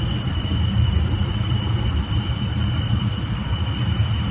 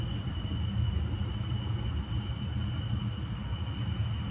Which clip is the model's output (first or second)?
first